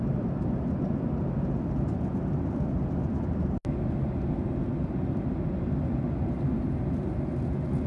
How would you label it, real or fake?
real